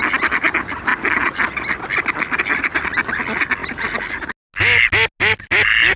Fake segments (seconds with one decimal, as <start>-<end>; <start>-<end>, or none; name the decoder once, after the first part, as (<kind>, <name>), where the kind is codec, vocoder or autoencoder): none